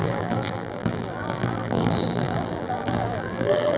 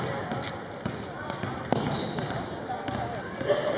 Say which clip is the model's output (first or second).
first